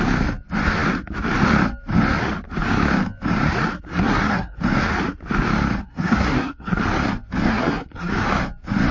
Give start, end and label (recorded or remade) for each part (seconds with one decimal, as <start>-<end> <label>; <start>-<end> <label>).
0.0-3.9 recorded; 3.9-4.6 remade; 4.6-5.8 recorded; 5.8-6.8 remade; 6.8-7.5 recorded; 7.5-8.1 remade; 8.1-8.9 recorded